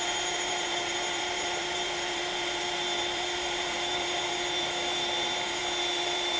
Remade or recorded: remade